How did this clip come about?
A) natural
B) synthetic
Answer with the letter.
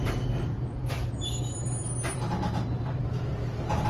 B